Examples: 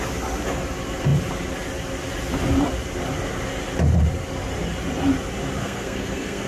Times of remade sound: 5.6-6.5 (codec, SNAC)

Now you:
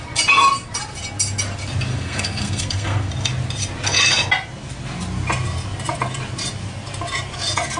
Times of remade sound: 1.9-3.1 (codec, SNAC)